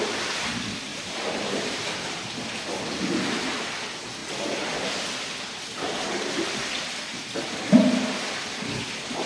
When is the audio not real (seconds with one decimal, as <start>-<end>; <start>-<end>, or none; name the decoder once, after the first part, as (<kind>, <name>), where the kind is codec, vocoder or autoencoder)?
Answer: 0.9-1.9 (vocoder, BigVGAN v2)